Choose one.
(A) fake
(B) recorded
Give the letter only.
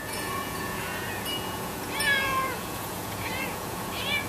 A